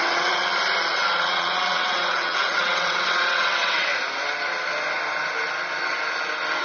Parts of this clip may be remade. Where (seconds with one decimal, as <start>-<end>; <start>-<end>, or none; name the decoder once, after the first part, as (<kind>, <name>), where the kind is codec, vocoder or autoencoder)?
0.0-0.4 (vocoder, WaveNeXt); 0.9-3.9